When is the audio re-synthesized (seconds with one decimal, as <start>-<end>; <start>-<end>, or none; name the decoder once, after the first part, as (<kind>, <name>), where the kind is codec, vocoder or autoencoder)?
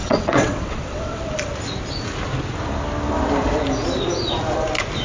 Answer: 0.0-1.3 (vocoder, WaveNeXt)